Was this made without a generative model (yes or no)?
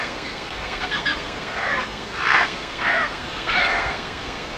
no